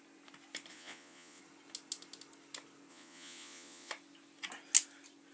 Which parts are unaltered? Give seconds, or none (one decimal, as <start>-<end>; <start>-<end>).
0.0-0.7; 1.4-2.9; 3.9-5.3